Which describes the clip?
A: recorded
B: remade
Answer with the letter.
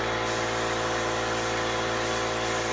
A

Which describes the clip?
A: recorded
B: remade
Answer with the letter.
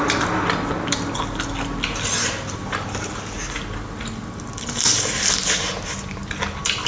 A